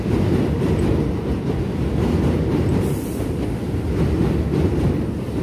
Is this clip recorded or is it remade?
recorded